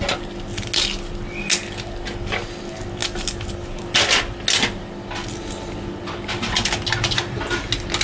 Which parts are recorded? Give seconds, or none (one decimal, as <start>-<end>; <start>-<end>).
0.0-8.0